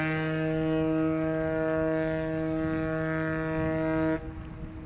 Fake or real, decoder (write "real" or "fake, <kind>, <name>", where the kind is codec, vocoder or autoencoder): real